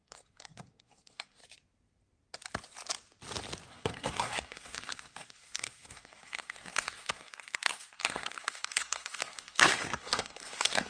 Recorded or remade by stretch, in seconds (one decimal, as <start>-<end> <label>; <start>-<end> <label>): 0.0-1.4 remade; 1.4-3.7 recorded; 3.7-10.9 remade